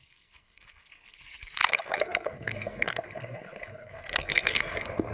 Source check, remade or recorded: remade